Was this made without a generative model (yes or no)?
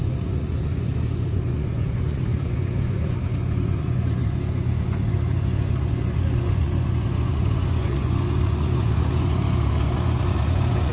no